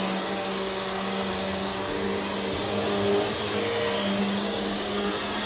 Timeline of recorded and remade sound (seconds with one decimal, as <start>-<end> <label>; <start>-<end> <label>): 0.0-1.7 remade; 1.7-4.2 recorded; 4.2-5.5 remade